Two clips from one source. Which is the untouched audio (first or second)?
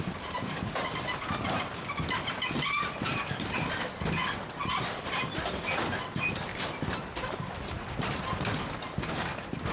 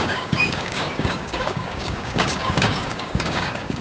first